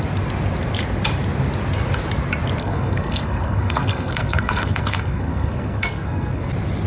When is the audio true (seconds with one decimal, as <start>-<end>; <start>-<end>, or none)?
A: 0.0-2.6; 6.5-6.9